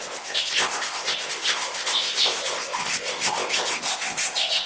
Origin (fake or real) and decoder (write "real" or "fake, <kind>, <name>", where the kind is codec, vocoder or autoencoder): fake, codec, ZipCodec